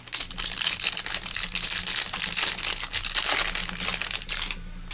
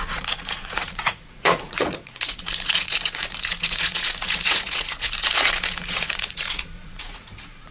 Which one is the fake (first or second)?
second